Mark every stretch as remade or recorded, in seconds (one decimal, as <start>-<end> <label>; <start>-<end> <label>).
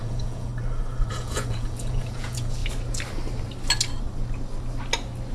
0.0-0.5 remade; 0.5-1.1 recorded; 1.1-2.6 remade; 2.6-5.3 recorded